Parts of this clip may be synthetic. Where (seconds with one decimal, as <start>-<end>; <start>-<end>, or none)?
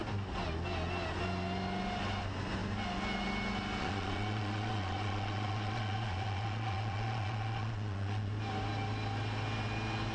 3.8-8.3